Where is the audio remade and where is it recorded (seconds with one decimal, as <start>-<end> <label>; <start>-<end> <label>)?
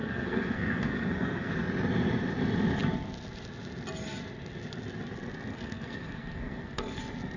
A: 0.0-1.5 remade; 1.5-5.5 recorded; 5.5-7.0 remade; 7.0-7.4 recorded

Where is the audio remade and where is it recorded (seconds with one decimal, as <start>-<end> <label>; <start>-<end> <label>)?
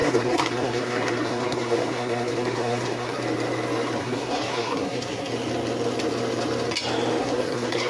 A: 0.0-3.2 remade; 3.2-4.0 recorded; 4.0-5.3 remade; 5.3-7.2 recorded; 7.2-7.9 remade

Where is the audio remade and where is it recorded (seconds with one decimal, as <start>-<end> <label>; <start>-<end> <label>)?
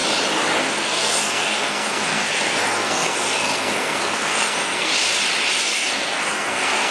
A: 0.0-0.6 recorded; 0.6-4.9 remade; 4.9-5.6 recorded; 5.6-6.9 remade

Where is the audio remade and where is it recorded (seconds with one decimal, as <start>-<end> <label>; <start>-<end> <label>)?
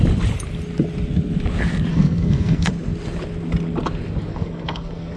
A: 0.0-1.9 recorded; 1.9-2.7 remade; 2.7-4.3 recorded; 4.3-5.2 remade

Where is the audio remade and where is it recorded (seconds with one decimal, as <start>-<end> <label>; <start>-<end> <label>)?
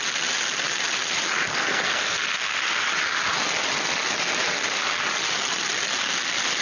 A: 0.0-1.5 recorded; 1.5-2.6 remade; 2.6-6.6 recorded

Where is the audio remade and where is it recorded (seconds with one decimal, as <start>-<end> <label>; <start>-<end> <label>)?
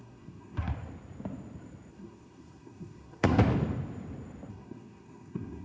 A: 0.0-0.7 remade; 0.7-1.9 recorded; 1.9-3.4 remade; 3.4-4.5 recorded; 4.5-5.6 remade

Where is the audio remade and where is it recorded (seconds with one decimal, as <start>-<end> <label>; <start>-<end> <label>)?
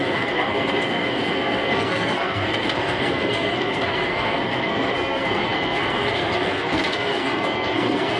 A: 0.0-8.2 remade